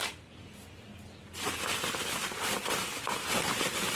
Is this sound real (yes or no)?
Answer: yes